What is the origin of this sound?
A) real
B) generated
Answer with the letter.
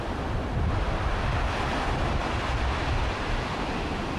A